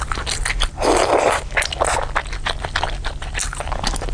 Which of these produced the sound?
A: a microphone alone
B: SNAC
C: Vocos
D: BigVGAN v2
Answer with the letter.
A